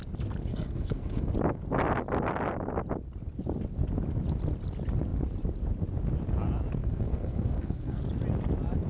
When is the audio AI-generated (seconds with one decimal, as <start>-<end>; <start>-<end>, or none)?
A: 0.5-1.3; 6.8-8.0